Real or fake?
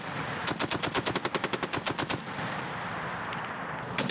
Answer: real